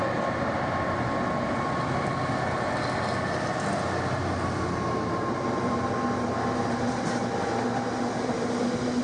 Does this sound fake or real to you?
real